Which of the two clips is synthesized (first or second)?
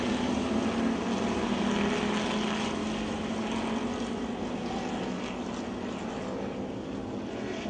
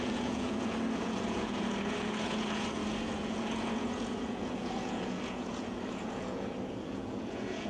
second